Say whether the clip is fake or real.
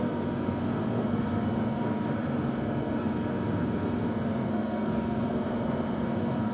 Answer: fake